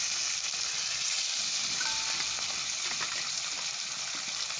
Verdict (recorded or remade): recorded